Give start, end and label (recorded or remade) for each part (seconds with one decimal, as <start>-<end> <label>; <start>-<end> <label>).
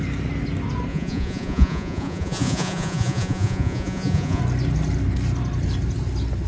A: 0.0-0.9 recorded; 0.9-4.4 remade; 4.4-6.5 recorded